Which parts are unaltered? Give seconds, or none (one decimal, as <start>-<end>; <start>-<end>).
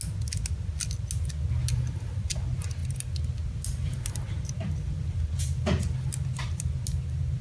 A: 0.0-7.4